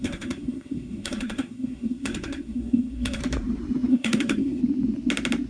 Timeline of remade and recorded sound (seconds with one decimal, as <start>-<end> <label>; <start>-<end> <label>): 0.0-3.2 remade; 3.2-3.9 recorded; 3.9-4.6 remade; 4.6-5.5 recorded